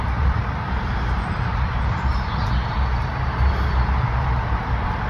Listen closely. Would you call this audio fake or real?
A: fake